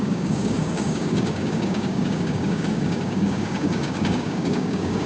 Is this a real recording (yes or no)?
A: no